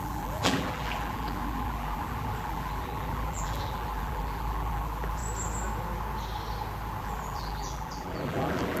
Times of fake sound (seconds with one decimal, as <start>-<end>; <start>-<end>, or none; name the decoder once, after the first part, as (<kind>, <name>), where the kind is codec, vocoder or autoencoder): 0.0-5.2 (vocoder, BigVGAN v2); 7.0-8.8